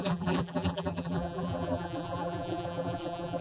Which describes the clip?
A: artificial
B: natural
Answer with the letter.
A